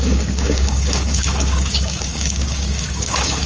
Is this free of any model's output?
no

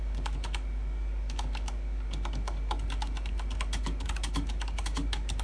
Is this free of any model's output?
no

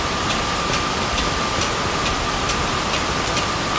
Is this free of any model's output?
yes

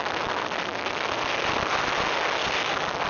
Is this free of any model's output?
yes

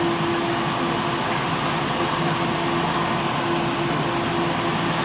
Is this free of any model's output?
yes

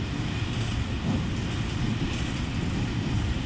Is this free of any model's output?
yes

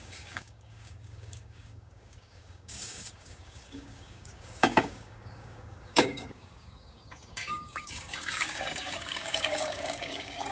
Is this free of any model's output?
no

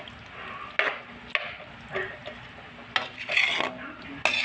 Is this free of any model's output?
yes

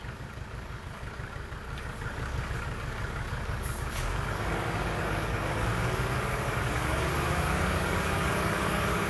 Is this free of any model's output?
no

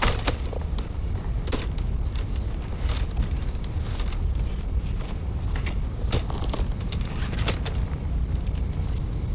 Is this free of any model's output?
yes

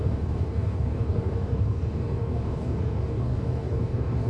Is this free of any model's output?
no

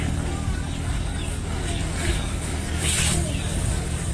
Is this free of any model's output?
no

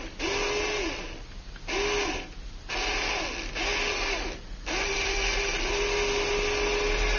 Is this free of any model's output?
yes